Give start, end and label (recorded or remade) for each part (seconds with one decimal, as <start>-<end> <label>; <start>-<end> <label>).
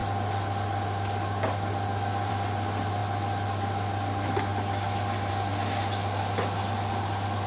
0.0-7.5 recorded